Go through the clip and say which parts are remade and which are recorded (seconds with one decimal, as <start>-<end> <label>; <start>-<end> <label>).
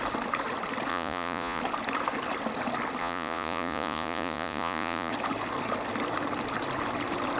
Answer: 0.0-0.9 recorded; 0.9-1.6 remade; 1.6-3.0 recorded; 3.0-5.1 remade; 5.1-7.4 recorded